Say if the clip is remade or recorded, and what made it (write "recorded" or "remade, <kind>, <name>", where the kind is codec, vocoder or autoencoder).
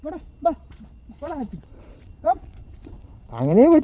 remade, vocoder, Vocos